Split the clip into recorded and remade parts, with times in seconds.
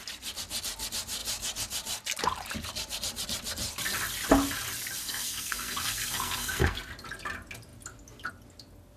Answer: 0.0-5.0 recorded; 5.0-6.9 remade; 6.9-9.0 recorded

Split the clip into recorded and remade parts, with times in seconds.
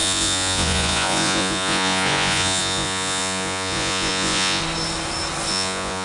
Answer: 0.0-4.6 remade; 4.6-5.5 recorded; 5.5-6.0 remade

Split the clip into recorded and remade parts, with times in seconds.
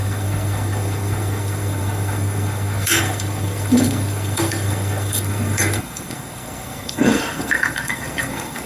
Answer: 0.0-8.7 remade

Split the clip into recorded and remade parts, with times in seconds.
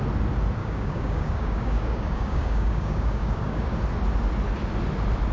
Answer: 0.0-0.6 recorded; 0.6-3.8 remade; 3.8-5.3 recorded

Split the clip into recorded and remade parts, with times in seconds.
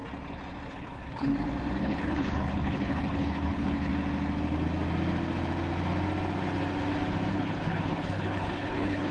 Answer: 0.0-0.7 recorded; 0.7-1.3 remade; 1.3-1.8 recorded; 1.8-3.9 remade; 3.9-7.3 recorded; 7.3-9.1 remade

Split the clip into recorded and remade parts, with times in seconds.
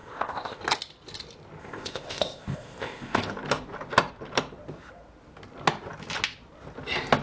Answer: 0.0-0.6 remade; 0.6-1.6 recorded; 1.6-3.3 remade; 3.3-7.2 recorded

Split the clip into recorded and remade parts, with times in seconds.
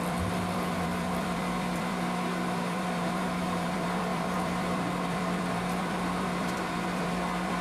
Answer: 0.0-7.6 remade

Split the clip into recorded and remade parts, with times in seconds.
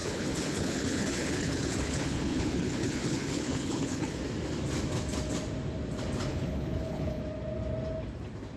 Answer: 0.0-4.2 remade; 4.2-6.3 recorded; 6.3-7.2 remade; 7.2-8.6 recorded